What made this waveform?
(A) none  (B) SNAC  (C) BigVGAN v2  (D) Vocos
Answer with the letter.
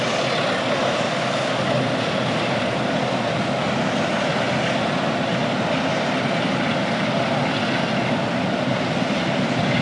A